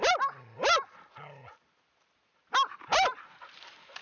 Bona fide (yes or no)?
yes